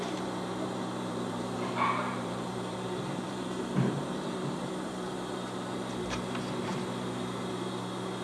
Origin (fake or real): fake